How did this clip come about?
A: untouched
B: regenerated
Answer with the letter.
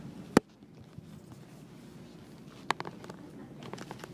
A